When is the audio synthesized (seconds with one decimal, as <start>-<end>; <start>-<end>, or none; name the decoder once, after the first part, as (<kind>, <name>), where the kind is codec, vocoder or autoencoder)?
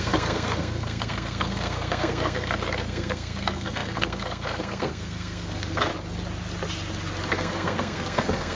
0.0-5.9 (codec, SNAC); 7.3-8.6